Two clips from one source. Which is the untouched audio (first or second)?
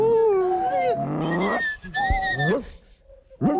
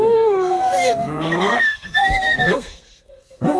first